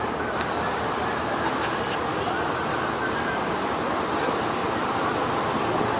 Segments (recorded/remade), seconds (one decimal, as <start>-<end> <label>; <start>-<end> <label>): 0.0-2.1 recorded; 2.1-2.6 remade; 2.6-6.0 recorded